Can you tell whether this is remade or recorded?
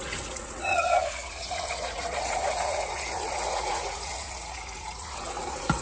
remade